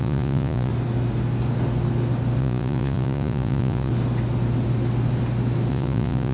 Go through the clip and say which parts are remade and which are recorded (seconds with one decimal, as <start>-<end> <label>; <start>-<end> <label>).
0.0-0.7 remade; 0.7-2.4 recorded; 2.4-3.9 remade; 3.9-5.7 recorded; 5.7-6.3 remade